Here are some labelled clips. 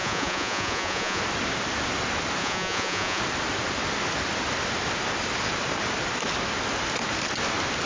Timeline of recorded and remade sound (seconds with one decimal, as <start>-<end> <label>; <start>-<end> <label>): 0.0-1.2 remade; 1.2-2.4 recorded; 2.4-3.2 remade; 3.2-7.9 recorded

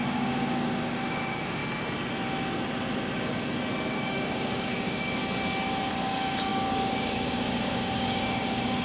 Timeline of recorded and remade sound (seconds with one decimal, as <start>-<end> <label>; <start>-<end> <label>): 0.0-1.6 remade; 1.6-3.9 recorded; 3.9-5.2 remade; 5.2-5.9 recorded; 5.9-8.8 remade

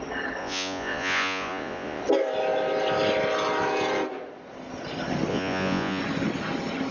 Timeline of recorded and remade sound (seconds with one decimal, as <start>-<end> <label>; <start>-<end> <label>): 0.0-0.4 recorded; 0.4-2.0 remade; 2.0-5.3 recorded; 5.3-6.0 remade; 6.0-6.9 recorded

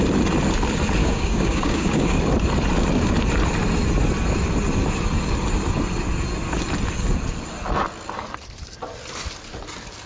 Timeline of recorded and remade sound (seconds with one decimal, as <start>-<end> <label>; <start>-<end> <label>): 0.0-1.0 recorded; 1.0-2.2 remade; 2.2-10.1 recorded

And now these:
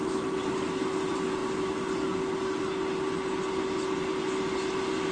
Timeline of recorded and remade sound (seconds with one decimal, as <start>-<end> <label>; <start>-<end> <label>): 0.0-5.1 recorded